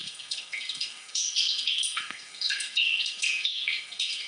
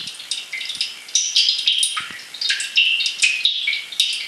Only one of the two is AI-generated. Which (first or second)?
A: first